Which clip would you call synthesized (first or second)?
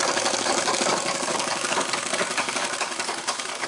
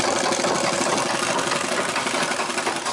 first